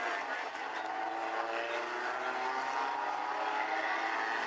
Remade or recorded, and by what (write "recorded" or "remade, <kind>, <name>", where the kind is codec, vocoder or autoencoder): recorded